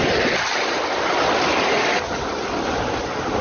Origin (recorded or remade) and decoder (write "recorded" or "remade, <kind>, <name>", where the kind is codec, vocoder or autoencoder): recorded